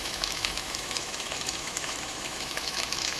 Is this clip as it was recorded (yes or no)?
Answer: no